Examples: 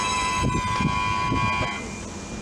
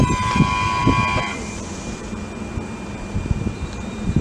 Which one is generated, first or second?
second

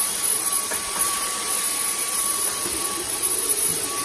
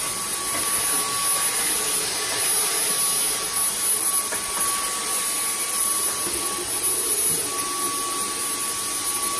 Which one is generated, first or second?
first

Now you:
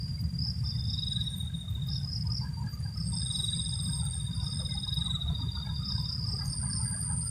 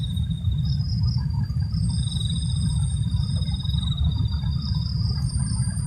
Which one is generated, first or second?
second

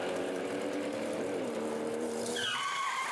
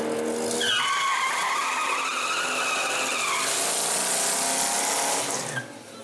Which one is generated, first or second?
first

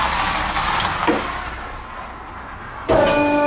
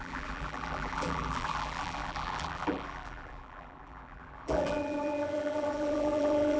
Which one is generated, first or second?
second